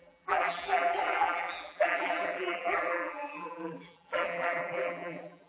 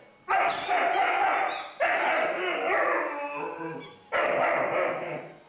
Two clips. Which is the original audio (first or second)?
second